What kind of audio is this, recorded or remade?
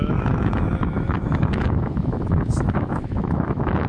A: remade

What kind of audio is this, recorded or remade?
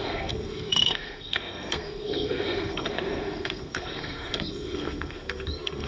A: remade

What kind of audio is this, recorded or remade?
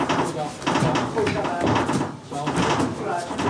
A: recorded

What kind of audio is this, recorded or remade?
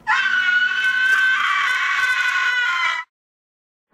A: recorded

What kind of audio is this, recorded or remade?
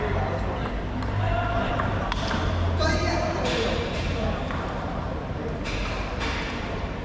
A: remade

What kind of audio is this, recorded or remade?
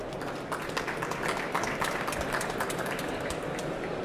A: recorded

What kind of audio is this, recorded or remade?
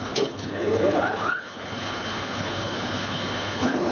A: remade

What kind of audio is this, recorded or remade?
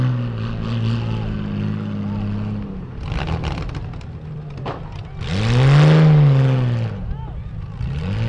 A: recorded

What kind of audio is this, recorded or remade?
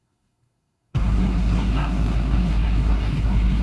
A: remade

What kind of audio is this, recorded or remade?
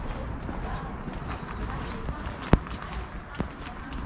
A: remade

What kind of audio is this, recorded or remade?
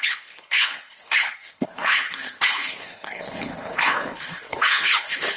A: remade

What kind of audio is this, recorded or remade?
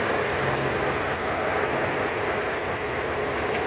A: recorded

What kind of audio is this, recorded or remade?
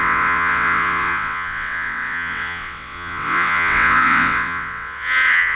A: remade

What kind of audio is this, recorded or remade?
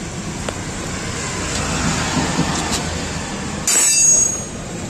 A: recorded